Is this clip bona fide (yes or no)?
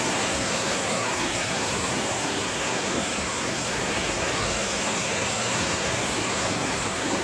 no